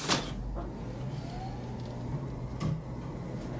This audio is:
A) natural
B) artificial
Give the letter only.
A